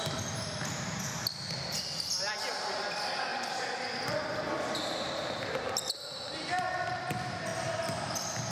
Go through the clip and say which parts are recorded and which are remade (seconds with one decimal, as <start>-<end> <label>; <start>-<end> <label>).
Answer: 0.0-3.3 recorded; 3.3-6.3 remade; 6.3-8.5 recorded